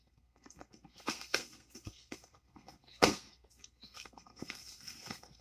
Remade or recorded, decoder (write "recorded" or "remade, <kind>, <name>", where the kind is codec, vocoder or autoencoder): remade, codec, SNAC